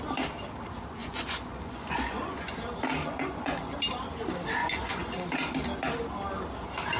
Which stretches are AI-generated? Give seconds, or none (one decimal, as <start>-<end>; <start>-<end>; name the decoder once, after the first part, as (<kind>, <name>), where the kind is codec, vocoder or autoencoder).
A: 1.0-2.5 (vocoder, Vocos); 3.0-3.7; 4.6-5.3